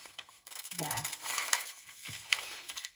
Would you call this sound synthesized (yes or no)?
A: yes